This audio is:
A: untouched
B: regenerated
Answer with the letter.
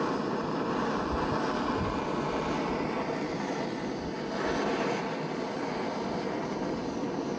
A